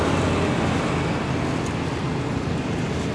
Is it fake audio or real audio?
real